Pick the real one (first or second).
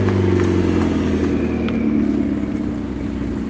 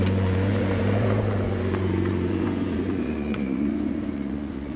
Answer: first